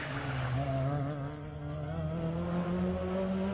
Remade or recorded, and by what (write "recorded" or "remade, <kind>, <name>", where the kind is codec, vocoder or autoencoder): recorded